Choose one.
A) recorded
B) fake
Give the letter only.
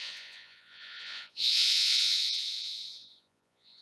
B